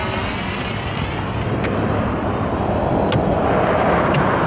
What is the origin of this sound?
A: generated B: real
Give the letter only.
B